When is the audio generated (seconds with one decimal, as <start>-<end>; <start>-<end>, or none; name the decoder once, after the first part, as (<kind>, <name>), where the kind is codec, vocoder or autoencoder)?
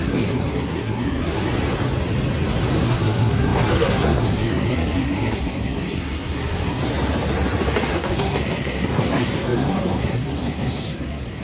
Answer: 0.0-1.5 (codec, SNAC); 2.8-6.8; 7.9-11.4